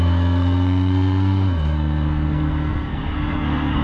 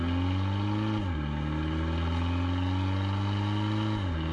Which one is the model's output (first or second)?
first